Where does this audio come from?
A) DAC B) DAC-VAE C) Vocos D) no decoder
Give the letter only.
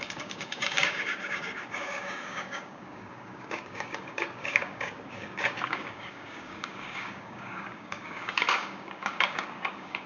A